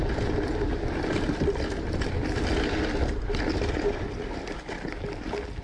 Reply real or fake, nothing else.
real